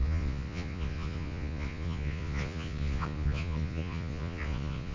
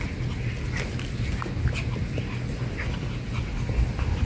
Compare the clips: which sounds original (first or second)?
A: second